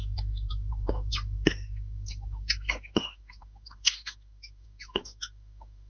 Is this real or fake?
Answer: fake